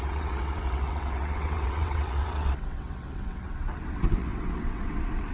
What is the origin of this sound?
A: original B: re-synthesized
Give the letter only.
B